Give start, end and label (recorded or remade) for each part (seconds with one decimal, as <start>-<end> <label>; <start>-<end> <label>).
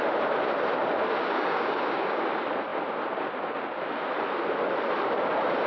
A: 0.0-1.2 recorded; 1.2-2.2 remade; 2.2-5.7 recorded